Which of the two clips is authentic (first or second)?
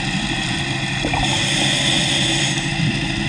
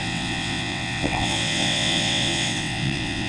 first